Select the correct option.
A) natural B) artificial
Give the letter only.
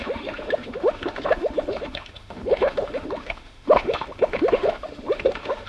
B